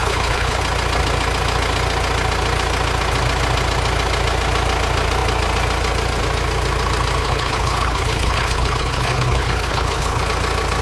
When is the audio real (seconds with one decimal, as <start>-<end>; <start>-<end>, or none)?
0.6-7.2; 10.2-10.8